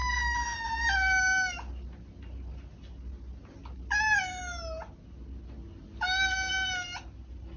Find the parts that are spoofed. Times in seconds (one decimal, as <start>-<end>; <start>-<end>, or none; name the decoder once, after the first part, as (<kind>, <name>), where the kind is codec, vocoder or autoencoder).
none